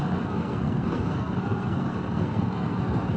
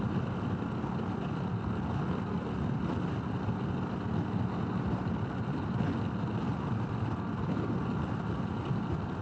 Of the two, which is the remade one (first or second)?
first